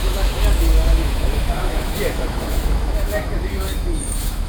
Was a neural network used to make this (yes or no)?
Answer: yes